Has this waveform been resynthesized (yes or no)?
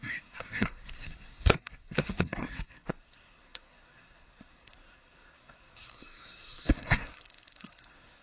yes